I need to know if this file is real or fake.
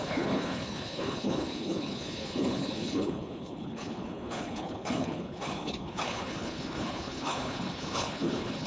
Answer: fake